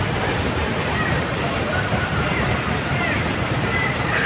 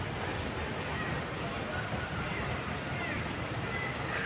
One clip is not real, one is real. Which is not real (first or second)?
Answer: first